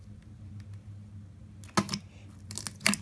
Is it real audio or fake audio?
real